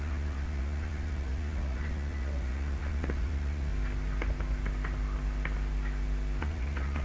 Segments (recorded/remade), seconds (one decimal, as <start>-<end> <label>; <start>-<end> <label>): 0.0-3.7 remade; 3.7-6.4 recorded; 6.4-7.0 remade